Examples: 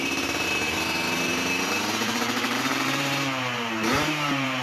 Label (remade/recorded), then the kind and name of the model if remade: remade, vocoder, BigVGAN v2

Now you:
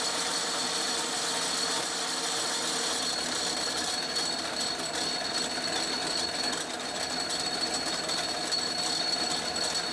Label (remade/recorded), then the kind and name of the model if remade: recorded